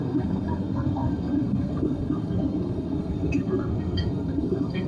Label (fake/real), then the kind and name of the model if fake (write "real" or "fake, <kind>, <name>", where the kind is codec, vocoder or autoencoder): fake, codec, SNAC